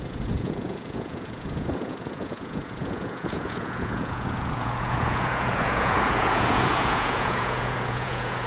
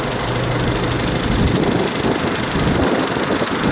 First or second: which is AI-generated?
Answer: first